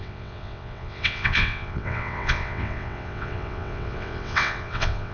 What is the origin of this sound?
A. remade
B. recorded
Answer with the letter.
A